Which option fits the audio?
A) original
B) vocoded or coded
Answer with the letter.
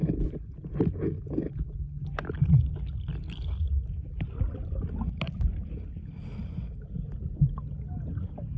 A